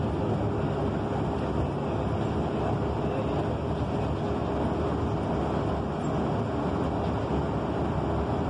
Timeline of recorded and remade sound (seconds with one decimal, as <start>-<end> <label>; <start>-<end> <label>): 0.0-8.5 recorded